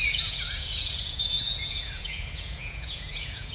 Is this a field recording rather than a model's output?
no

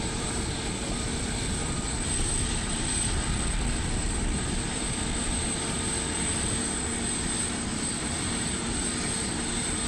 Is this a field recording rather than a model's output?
no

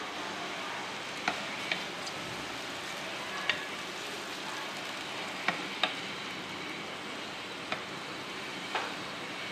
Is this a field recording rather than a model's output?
yes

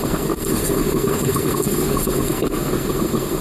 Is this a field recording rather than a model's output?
no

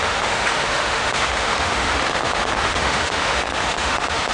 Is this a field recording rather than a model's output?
no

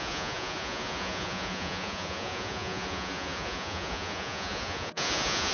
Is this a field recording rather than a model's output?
no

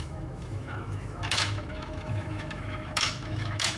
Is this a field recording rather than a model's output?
no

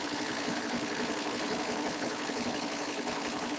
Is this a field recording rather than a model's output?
no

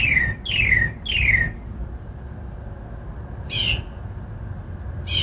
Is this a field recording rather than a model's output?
yes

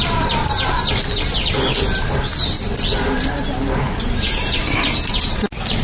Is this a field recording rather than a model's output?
yes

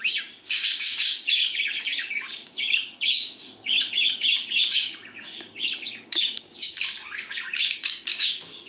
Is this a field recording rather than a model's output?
no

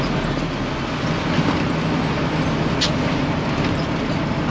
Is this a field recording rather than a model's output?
yes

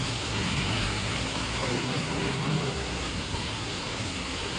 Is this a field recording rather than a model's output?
no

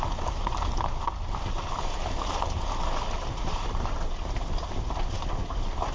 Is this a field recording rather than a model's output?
yes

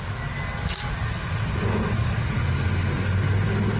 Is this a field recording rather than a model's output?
yes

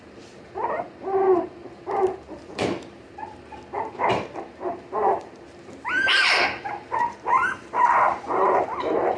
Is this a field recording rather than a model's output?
no